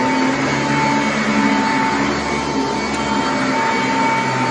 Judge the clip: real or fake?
real